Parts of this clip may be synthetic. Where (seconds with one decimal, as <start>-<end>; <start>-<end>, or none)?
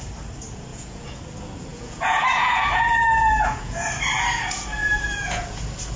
0.7-1.2; 1.7-3.9; 4.8-5.6